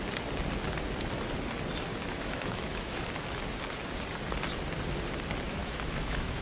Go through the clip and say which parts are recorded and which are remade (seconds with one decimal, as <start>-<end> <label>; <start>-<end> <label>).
0.0-1.9 recorded; 1.9-3.1 remade; 3.1-5.6 recorded; 5.6-6.4 remade

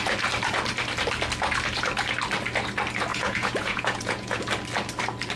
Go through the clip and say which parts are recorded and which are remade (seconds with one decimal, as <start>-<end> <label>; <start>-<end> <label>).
0.0-3.1 recorded; 3.1-4.4 remade; 4.4-5.4 recorded

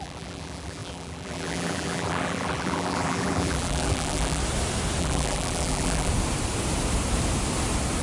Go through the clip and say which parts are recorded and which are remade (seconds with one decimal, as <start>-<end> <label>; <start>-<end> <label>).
0.0-4.4 remade; 4.4-5.0 recorded; 5.0-6.1 remade; 6.1-8.0 recorded

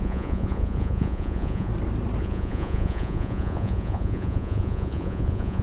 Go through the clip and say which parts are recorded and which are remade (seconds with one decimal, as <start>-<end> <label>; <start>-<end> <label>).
0.0-1.7 remade; 1.7-2.2 recorded; 2.2-5.6 remade

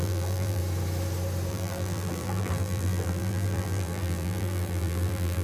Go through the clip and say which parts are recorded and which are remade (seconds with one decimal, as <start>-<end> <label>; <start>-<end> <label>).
0.0-0.6 remade; 0.6-1.5 recorded; 1.5-5.4 remade

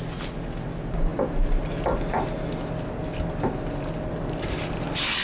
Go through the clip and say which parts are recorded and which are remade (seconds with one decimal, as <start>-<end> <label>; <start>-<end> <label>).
0.0-5.2 recorded

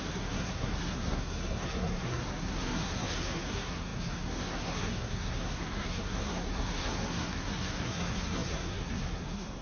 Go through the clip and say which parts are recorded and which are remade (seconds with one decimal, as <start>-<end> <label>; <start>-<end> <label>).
0.0-9.6 remade